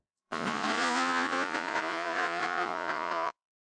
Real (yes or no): no